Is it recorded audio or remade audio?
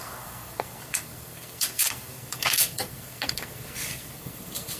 remade